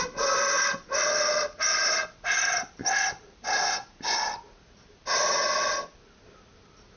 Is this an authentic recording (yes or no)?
yes